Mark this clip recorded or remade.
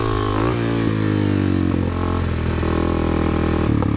recorded